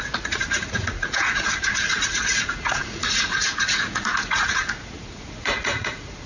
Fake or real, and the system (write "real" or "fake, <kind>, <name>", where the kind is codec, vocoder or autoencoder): fake, vocoder, Vocos